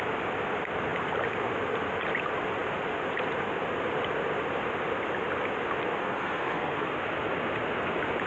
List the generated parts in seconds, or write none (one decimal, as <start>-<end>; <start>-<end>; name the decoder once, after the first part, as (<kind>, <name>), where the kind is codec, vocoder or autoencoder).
6.0-6.9 (codec, SNAC)